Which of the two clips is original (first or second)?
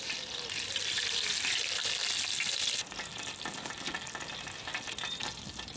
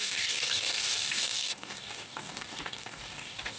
first